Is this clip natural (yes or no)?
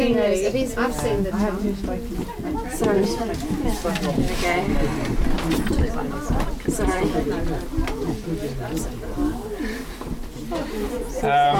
yes